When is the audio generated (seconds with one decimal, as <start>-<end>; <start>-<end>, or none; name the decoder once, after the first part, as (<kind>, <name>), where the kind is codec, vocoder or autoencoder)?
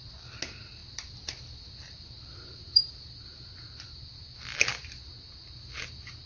none